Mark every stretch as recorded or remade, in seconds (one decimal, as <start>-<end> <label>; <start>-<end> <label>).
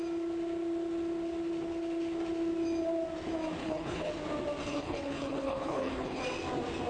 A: 0.0-3.6 recorded; 3.6-4.1 remade; 4.1-4.6 recorded; 4.6-6.2 remade; 6.2-6.9 recorded